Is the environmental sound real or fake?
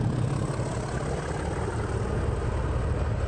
real